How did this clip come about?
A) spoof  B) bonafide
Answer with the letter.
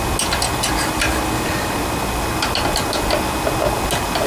B